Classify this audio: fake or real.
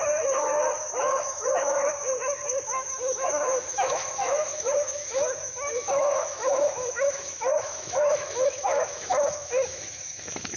fake